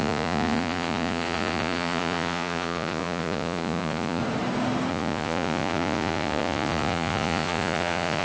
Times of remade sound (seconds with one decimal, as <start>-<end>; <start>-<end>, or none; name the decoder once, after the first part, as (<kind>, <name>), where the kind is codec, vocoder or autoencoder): 0.0-4.2 (vocoder, Vocos); 4.9-8.2